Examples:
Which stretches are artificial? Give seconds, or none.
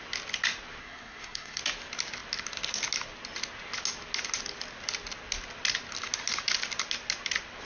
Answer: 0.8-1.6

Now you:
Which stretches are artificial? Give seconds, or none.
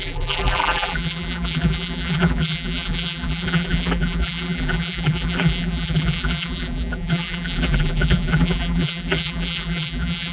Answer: 0.0-10.3